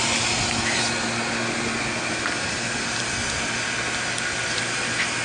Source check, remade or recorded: recorded